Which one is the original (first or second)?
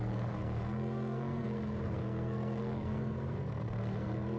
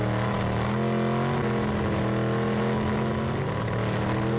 second